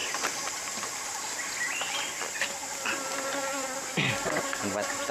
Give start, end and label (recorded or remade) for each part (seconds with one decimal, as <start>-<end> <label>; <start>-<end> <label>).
0.0-5.1 recorded